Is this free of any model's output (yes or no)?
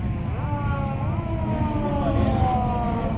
yes